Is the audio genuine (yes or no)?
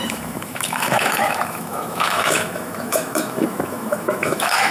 no